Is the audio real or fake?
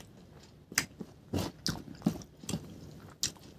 real